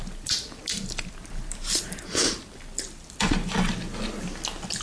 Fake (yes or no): no